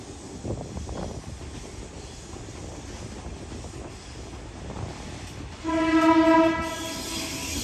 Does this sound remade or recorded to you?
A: recorded